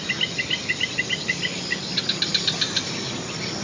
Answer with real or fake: real